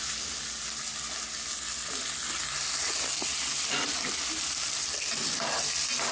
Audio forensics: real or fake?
real